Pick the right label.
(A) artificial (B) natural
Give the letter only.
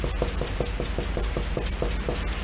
B